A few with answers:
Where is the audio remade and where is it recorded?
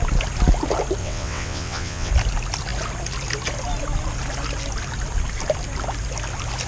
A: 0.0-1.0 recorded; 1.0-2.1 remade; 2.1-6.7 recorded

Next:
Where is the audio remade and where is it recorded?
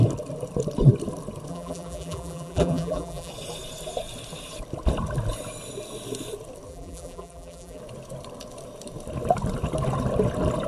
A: 0.0-1.5 recorded; 1.5-3.3 remade; 3.3-6.7 recorded; 6.7-7.8 remade; 7.8-10.7 recorded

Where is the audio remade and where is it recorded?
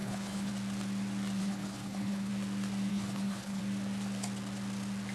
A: 0.0-0.5 remade; 0.5-1.4 recorded; 1.4-2.3 remade; 2.3-2.9 recorded; 2.9-3.6 remade; 3.6-5.1 recorded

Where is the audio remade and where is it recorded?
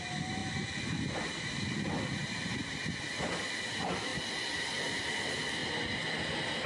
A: 0.0-6.7 recorded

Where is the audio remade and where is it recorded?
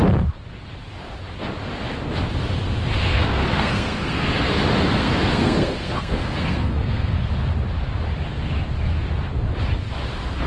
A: 0.0-3.1 recorded; 3.1-4.5 remade; 4.5-5.0 recorded; 5.0-7.3 remade; 7.3-10.5 recorded